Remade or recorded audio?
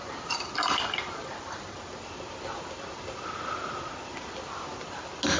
recorded